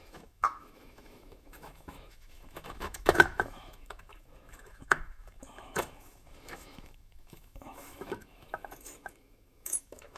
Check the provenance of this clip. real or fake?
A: fake